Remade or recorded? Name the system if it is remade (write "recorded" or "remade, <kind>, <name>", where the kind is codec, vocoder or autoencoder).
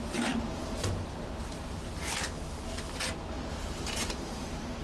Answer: recorded